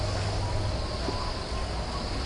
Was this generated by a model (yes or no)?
no